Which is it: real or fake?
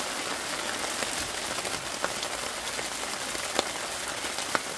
real